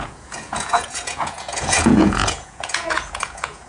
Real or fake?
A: fake